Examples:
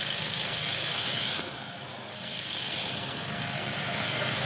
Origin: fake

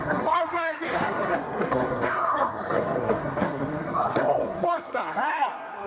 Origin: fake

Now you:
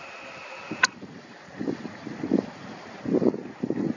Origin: real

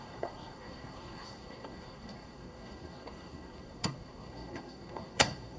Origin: fake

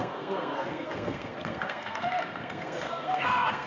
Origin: fake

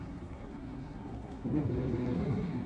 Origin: fake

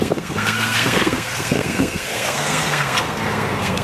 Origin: fake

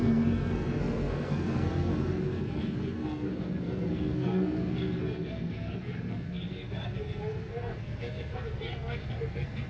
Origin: fake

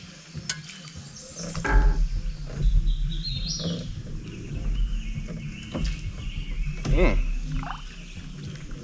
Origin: real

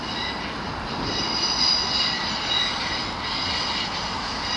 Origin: real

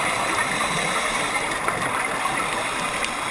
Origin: real